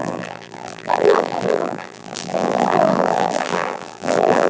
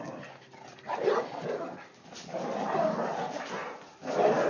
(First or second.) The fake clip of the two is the first